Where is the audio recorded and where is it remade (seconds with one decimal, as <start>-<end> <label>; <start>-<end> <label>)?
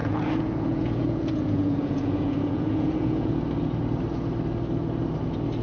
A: 0.0-3.4 remade; 3.4-5.6 recorded